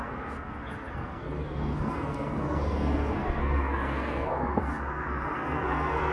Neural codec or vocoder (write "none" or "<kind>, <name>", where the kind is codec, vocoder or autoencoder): codec, SNAC